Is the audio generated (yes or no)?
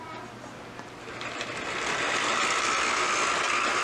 no